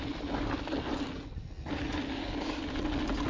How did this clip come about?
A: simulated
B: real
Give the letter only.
B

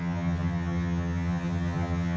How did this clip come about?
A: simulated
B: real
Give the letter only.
A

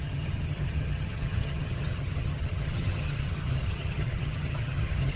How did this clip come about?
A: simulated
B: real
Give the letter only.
A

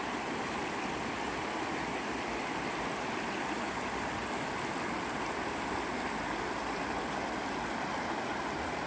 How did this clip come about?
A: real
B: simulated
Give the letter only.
A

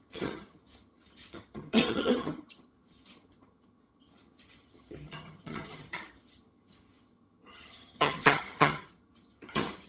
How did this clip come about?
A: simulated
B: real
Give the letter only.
A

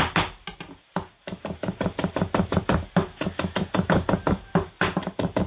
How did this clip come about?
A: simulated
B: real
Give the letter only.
B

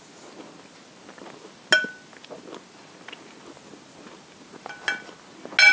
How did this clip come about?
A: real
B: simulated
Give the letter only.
A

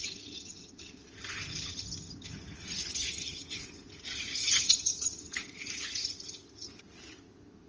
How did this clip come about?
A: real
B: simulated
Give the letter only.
B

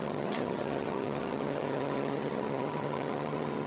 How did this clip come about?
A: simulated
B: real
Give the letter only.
A